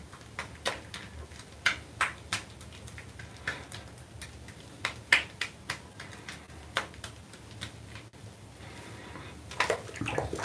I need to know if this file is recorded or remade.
recorded